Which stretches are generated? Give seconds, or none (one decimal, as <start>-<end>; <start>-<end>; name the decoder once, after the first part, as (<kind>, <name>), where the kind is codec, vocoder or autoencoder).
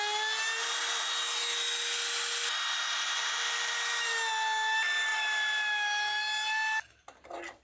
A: none